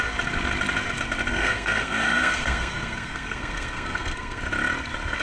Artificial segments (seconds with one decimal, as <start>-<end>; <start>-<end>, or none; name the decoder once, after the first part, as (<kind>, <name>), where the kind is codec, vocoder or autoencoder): 1.3-4.4 (codec, SNAC)

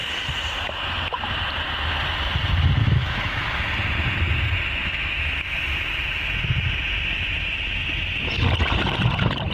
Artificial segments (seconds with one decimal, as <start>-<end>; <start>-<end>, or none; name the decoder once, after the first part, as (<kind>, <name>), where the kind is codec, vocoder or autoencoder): 2.8-3.7 (autoencoder, DAC-VAE); 4.8-5.3

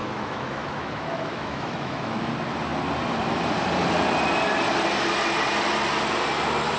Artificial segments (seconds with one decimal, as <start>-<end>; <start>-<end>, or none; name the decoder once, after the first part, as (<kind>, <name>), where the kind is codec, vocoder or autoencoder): 0.0-2.3 (autoencoder, DAC-VAE)

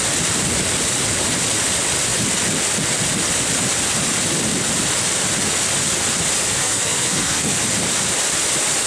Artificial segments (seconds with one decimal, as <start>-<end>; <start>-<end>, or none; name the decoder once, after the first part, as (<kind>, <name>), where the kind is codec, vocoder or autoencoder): 6.6-7.6 (codec, SNAC)

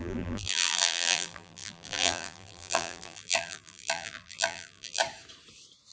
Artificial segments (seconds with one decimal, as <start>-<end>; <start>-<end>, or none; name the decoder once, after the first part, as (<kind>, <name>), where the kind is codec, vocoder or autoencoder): 0.0-5.0 (vocoder, BigVGAN v2)

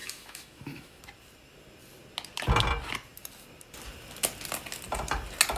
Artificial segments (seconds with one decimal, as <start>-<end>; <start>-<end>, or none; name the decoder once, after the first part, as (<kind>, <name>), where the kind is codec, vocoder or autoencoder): 0.0-1.0 (autoencoder, DAC-VAE)

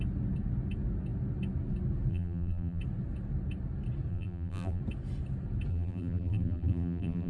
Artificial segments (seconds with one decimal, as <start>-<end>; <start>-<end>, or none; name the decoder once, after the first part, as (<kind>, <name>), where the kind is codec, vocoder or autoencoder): 2.1-2.8 (vocoder, BigVGAN v2); 4.1-4.8; 5.7-7.3